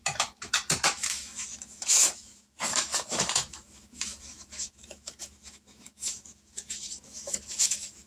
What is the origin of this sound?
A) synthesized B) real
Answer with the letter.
A